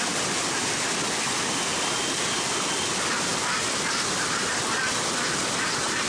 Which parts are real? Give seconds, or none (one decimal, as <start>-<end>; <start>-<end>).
0.0-6.1